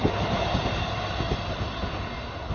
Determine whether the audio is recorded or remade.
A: recorded